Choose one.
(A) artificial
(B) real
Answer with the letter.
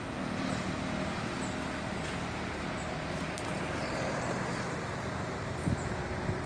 B